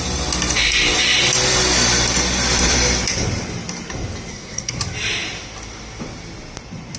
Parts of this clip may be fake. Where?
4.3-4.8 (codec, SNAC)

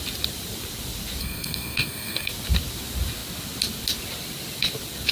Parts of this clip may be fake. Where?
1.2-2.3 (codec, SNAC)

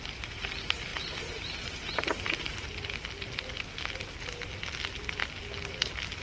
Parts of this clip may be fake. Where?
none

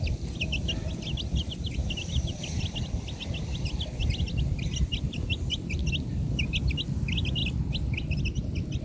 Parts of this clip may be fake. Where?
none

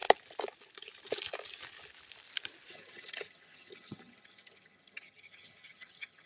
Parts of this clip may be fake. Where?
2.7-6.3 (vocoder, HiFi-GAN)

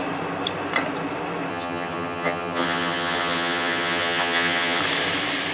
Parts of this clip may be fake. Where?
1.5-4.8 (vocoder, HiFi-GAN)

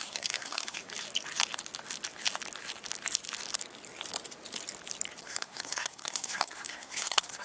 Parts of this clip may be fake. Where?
0.0-0.8 (codec, SNAC); 5.2-7.4

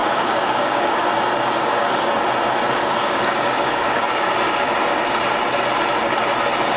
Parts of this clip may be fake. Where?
0.0-1.1 (codec, DAC); 1.6-2.1; 2.8-4.7